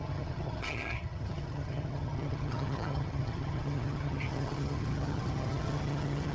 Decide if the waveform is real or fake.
fake